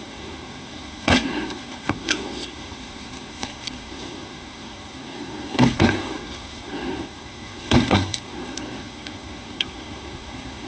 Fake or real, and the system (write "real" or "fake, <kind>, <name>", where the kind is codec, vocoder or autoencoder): fake, codec, SNAC